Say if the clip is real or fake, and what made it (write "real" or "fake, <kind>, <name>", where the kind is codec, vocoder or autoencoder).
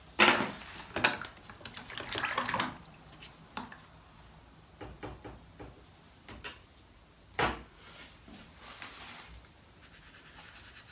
real